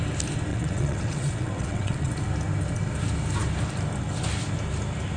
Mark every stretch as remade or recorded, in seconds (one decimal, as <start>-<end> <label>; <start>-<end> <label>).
0.0-0.5 recorded; 0.5-2.1 remade; 2.1-5.2 recorded